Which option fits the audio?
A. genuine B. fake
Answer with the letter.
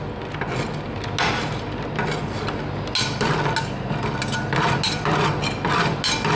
A